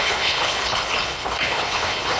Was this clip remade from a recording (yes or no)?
yes